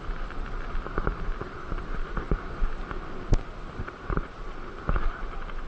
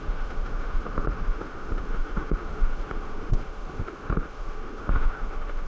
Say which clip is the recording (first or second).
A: first